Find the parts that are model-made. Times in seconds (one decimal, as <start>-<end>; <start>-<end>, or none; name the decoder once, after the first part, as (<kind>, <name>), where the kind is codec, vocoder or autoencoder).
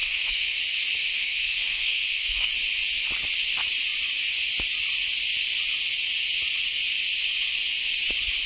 0.0-0.6 (codec, SNAC); 1.1-2.5